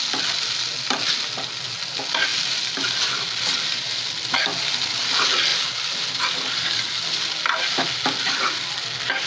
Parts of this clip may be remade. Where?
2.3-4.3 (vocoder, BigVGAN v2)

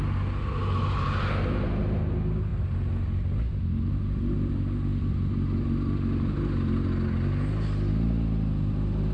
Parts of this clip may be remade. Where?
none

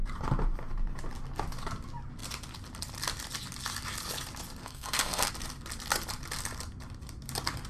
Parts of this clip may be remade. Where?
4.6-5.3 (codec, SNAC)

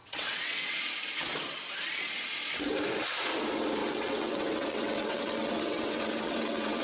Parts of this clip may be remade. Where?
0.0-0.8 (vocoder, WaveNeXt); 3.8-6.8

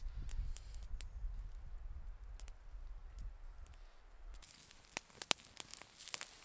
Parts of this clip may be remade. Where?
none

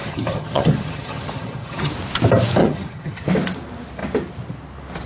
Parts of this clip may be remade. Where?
0.0-1.9 (vocoder, HiFi-GAN); 2.6-3.3

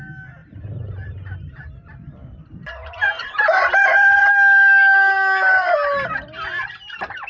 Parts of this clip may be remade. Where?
0.4-4.2 (vocoder, BigVGAN v2)

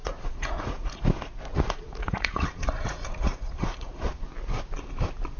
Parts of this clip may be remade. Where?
0.0-1.0 (vocoder, Vocos); 1.5-4.2